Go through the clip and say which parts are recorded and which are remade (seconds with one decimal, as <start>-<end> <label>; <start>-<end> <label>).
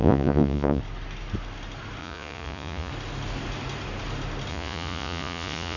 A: 0.0-0.8 remade; 0.8-2.0 recorded; 2.0-2.9 remade; 2.9-4.5 recorded; 4.5-5.8 remade